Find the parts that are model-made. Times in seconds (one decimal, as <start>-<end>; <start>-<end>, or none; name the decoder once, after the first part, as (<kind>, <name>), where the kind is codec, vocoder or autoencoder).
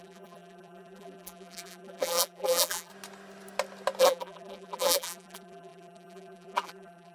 0.0-2.9 (vocoder, BigVGAN v2); 4.0-7.1